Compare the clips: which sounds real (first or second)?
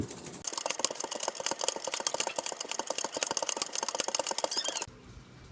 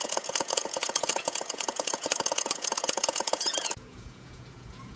first